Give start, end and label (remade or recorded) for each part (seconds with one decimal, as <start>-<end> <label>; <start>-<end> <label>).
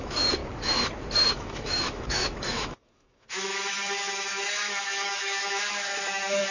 0.0-0.4 remade; 0.4-1.3 recorded; 1.3-6.5 remade